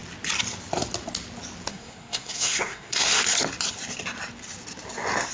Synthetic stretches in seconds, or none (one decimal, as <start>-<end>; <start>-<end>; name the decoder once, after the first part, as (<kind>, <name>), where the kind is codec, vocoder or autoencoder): 1.7-3.1 (codec, SNAC)